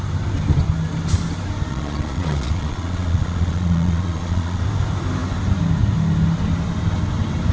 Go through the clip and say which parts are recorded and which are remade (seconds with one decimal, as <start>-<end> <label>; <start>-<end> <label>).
0.0-1.7 recorded; 1.7-4.6 remade; 4.6-7.5 recorded